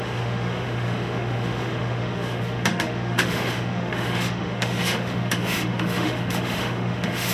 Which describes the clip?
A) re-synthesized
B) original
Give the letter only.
A